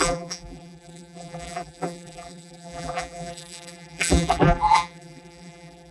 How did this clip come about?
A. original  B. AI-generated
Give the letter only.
B